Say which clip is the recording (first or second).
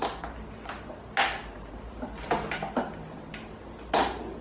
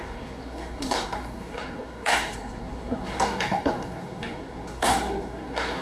first